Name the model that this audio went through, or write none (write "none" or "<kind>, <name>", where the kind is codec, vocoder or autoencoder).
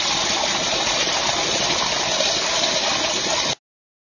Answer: none